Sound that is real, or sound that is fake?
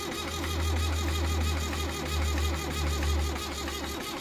real